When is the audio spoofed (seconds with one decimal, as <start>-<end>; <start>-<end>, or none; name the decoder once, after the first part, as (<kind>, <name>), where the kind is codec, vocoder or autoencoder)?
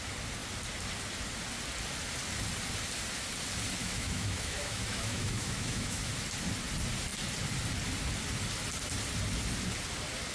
3.8-6.1 (autoencoder, DAC-VAE)